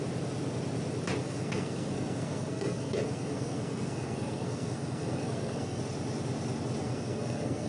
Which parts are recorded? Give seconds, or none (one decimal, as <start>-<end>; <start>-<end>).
0.0-1.2; 5.8-6.8